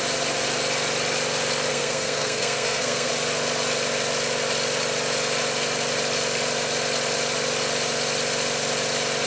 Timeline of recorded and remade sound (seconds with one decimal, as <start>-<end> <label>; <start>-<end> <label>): 0.0-1.7 recorded; 1.7-3.1 remade; 3.1-9.3 recorded